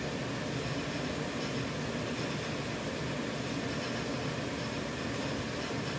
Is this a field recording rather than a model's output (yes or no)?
yes